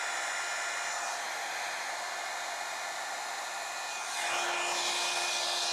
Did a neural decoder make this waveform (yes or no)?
no